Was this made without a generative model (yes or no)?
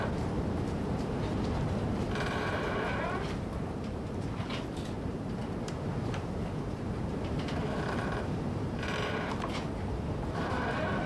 no